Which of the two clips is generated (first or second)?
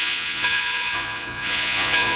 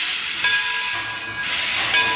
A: first